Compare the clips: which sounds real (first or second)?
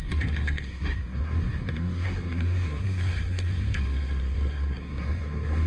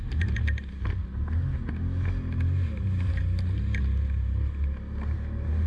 second